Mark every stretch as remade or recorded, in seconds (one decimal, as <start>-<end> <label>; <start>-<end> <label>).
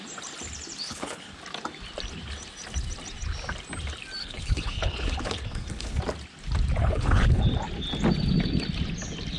0.0-0.8 recorded; 0.8-1.4 remade; 1.4-4.2 recorded; 4.2-6.0 remade; 6.0-6.8 recorded; 6.8-7.4 remade; 7.4-9.4 recorded